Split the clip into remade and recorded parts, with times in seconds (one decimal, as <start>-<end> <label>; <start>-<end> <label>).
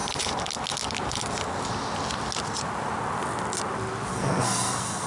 0.0-4.1 recorded; 4.1-5.1 remade